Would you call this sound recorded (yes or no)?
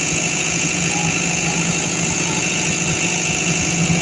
no